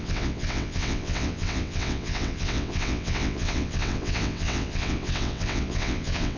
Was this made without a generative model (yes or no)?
no